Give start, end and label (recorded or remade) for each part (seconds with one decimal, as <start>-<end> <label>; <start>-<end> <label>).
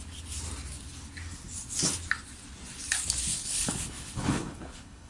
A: 0.0-3.3 recorded; 3.3-5.1 remade